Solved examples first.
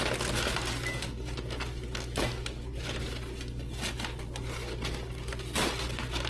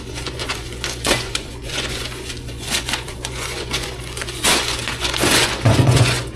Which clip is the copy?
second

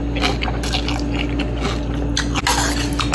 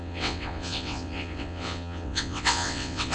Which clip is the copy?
second